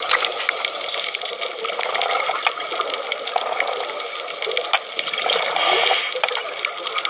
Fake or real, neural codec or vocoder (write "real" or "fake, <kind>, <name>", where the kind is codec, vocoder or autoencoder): real